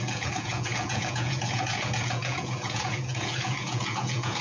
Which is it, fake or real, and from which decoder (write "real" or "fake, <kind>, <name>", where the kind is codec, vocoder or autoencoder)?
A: fake, vocoder, Vocos